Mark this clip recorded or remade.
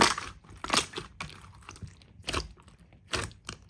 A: recorded